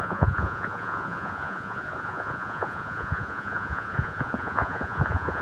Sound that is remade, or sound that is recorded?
remade